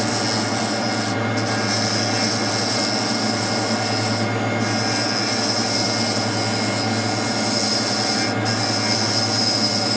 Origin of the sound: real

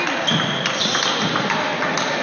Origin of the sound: real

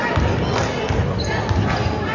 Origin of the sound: real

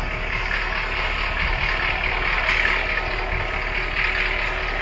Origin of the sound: real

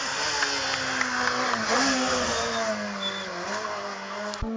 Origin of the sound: real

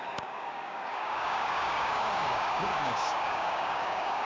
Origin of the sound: fake